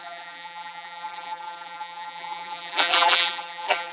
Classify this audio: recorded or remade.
remade